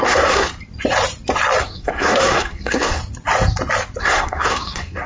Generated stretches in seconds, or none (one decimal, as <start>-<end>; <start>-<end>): 0.0-0.5; 1.6-3.0; 4.0-5.1